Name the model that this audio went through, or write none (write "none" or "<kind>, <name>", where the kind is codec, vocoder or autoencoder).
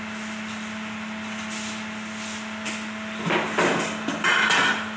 none